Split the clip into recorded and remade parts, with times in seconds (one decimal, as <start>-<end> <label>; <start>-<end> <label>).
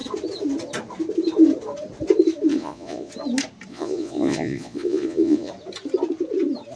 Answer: 0.0-2.5 recorded; 2.5-3.1 remade; 3.1-3.7 recorded; 3.7-5.5 remade; 5.5-6.8 recorded